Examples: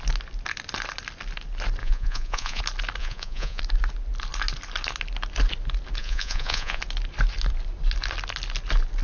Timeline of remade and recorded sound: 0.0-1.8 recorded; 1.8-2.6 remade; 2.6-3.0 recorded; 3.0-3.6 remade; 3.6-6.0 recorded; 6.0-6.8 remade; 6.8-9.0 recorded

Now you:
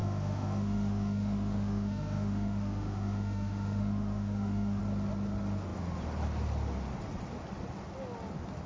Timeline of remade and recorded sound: 0.0-4.8 remade; 4.8-8.7 recorded